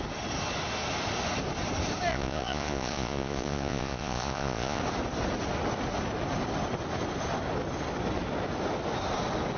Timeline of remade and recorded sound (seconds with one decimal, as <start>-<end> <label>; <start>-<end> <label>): 0.0-2.1 recorded; 2.1-4.8 remade; 4.8-9.6 recorded